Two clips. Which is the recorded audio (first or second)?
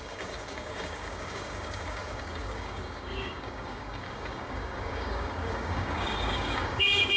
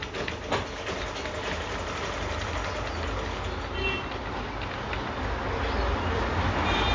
second